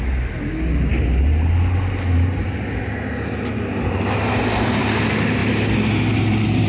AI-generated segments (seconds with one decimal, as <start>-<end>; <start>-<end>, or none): none

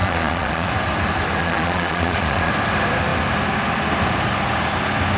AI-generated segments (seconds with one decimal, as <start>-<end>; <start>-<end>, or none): 0.0-0.7; 1.4-2.5

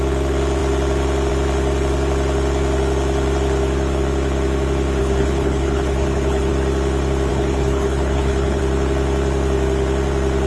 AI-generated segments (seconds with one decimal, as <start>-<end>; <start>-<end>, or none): 5.0-6.5; 7.3-8.6

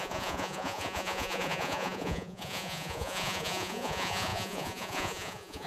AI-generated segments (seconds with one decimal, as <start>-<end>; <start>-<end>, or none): 0.0-5.7

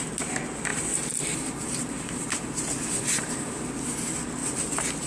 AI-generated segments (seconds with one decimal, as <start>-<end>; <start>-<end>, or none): 0.7-3.7

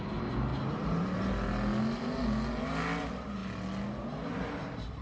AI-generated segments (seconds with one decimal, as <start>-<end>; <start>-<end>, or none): 0.5-1.2

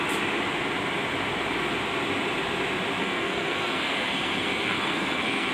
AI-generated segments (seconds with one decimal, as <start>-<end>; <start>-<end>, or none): 3.0-5.5

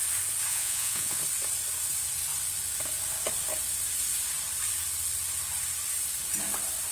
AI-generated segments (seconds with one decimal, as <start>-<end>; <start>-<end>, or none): 0.5-1.2